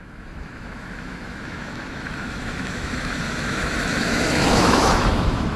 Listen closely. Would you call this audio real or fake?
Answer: fake